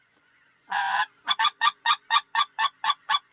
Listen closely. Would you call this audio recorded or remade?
remade